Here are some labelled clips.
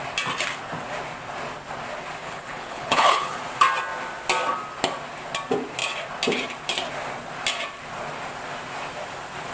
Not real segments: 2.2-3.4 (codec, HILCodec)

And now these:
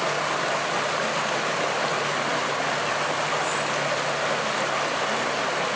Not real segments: none

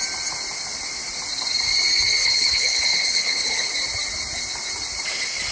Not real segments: 2.2-3.7 (codec, HILCodec)

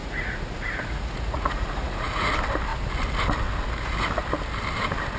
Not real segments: 0.0-2.3 (vocoder, Vocos)

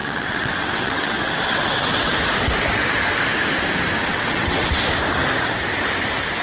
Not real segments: 0.0-2.1 (vocoder, WaveNeXt); 4.1-4.8

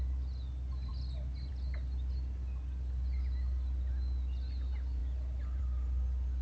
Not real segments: none

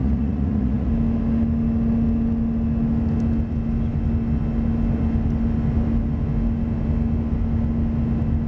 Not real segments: 0.0-0.9 (vocoder, Vocos)

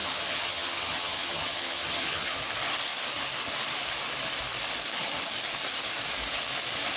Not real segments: 0.0-2.4 (vocoder, HiFi-GAN)